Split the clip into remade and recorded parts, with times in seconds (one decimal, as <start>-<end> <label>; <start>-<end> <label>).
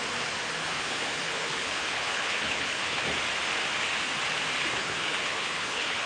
0.0-0.6 recorded; 0.6-3.0 remade; 3.0-4.7 recorded; 4.7-6.1 remade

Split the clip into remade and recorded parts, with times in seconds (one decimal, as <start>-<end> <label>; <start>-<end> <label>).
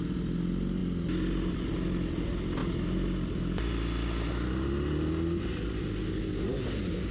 0.0-7.1 recorded